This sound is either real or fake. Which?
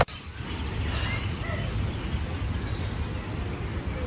real